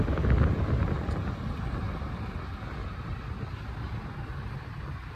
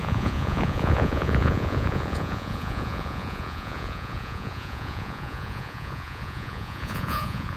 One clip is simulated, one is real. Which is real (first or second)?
first